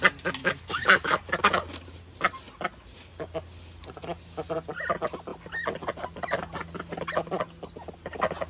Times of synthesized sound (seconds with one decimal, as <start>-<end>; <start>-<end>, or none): 0.4-1.2